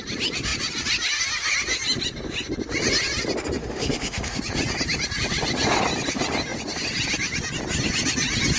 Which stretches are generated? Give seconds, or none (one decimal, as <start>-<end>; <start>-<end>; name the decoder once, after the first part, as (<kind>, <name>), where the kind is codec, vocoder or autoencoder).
3.6-4.4 (autoencoder, DAC-VAE)